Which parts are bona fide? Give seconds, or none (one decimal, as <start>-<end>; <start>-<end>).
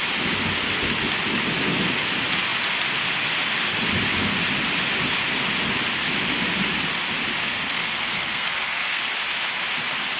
0.0-7.4; 9.0-10.2